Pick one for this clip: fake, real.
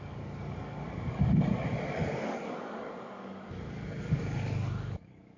fake